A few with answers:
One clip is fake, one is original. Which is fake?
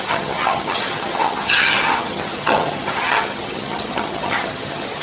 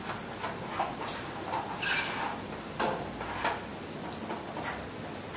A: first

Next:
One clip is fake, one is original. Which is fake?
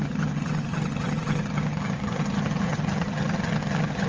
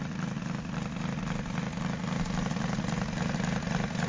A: first